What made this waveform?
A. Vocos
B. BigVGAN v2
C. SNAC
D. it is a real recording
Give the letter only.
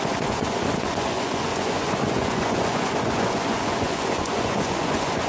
A